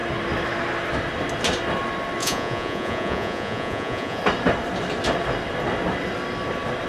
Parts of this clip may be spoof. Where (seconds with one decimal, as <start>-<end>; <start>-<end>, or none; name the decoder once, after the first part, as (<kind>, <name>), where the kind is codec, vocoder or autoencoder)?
2.2-4.2 (vocoder, Vocos)